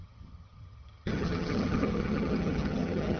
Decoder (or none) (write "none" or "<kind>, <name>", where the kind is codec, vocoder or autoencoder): vocoder, HiFi-GAN